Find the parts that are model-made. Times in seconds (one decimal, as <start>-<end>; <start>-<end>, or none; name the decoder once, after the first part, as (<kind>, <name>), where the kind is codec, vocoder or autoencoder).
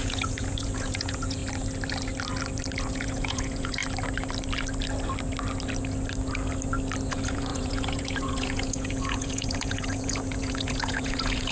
0.0-1.4 (vocoder, Vocos); 2.9-3.8; 7.1-11.5